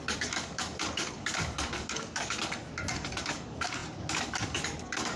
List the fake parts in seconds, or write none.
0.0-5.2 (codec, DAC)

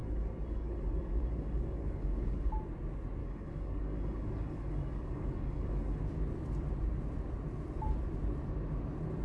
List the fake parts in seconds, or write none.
0.0-2.5 (codec, DAC); 3.2-6.0

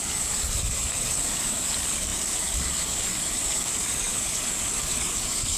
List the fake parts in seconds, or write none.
0.0-5.6 (codec, DAC)

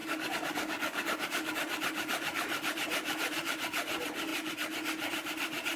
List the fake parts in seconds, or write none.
0.0-1.5 (codec, DAC)